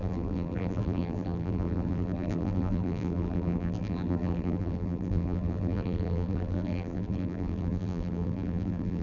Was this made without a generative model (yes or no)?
no